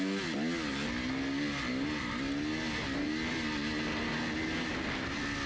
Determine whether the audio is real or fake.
real